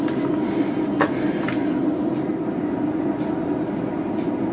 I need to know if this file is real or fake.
real